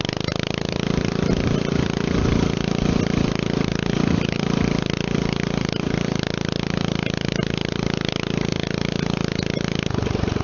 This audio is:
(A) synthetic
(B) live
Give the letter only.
B